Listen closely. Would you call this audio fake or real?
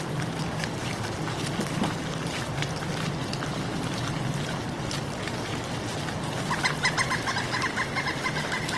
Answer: real